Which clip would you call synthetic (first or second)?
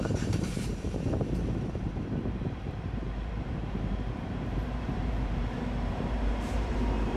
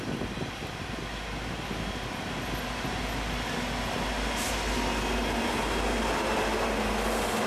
first